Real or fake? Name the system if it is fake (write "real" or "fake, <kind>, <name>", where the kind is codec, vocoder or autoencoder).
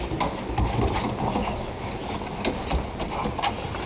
real